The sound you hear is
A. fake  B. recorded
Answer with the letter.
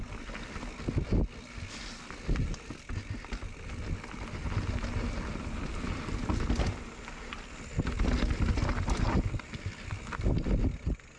B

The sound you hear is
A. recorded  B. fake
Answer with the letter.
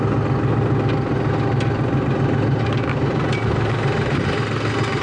A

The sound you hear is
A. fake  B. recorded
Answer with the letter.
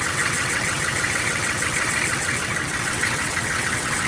A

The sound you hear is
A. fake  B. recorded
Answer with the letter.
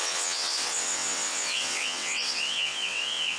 A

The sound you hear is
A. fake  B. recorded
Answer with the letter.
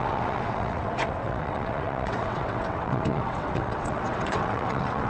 A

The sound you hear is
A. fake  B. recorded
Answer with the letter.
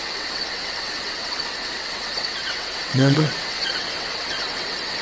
A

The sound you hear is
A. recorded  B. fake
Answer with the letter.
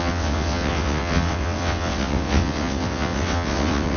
B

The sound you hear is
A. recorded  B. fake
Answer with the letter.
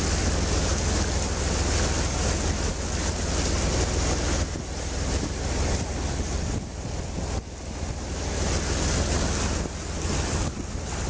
A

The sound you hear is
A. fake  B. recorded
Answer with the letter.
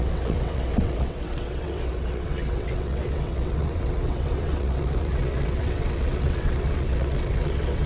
A